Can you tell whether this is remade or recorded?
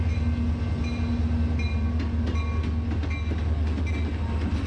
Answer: recorded